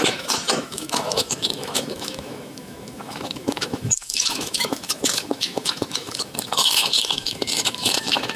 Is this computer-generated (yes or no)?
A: yes